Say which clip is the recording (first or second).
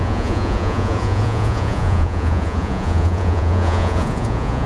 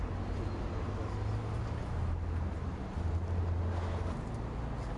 second